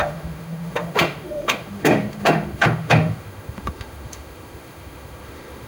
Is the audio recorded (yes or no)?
no